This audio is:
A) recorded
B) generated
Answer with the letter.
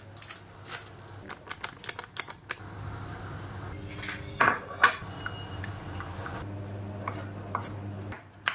A